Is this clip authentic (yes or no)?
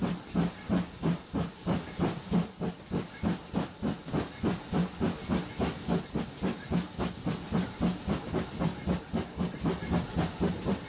yes